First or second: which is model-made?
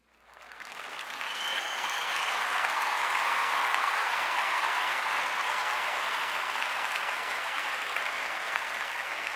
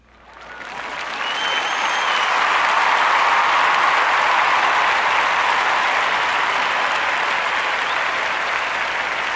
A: first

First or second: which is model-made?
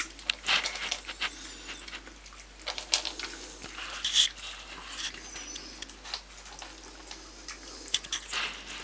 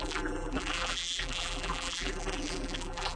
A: second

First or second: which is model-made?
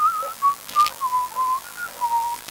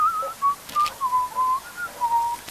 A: first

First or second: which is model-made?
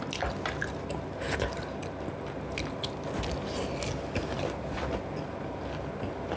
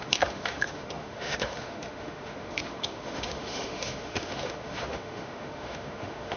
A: second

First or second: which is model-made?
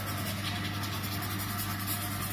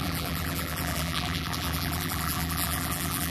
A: second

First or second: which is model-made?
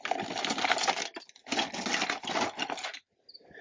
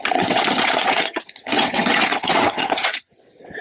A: second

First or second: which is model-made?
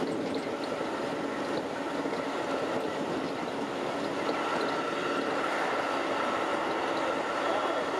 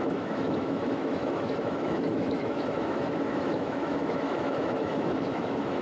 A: second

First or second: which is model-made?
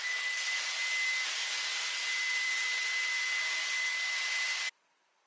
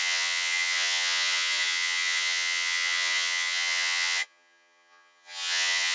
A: second